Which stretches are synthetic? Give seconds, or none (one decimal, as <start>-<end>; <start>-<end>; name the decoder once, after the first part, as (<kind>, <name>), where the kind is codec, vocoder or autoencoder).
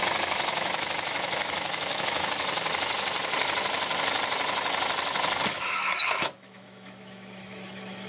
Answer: 0.5-2.3 (autoencoder, DAC-VAE); 5.5-8.1